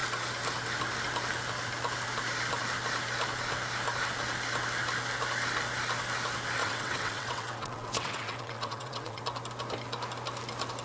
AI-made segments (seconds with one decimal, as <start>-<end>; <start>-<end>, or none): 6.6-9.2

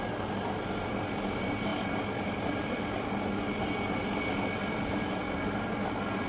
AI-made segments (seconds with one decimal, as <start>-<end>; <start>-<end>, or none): none

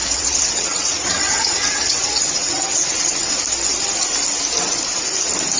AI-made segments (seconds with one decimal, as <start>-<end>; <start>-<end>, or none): 0.0-3.4

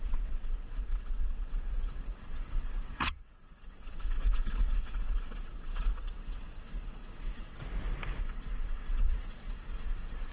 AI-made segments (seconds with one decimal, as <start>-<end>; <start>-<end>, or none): 0.0-7.6; 8.2-10.3

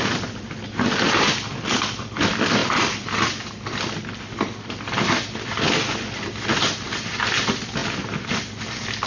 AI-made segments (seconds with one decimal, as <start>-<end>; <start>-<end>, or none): none

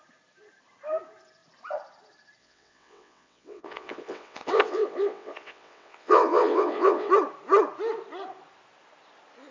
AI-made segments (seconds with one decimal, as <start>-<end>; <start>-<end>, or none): 2.4-7.1